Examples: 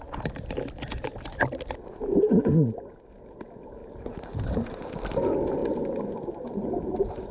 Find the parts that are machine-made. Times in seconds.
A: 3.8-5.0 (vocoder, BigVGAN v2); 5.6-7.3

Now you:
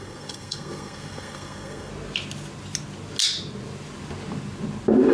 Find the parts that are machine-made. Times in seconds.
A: 0.0-1.9 (codec, SNAC)